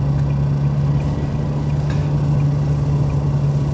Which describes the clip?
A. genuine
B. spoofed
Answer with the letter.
A